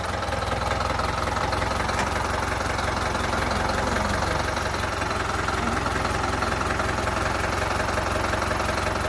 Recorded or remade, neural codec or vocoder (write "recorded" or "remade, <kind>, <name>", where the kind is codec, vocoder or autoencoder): recorded